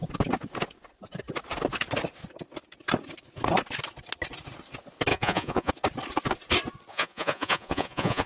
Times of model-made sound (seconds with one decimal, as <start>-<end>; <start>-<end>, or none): 5.1-5.7; 6.9-8.3